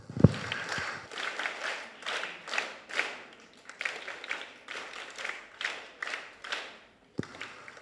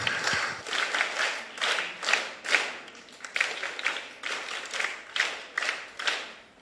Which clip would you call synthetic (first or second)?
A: first